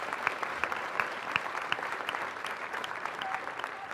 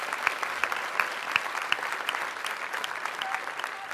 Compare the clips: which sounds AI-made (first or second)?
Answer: first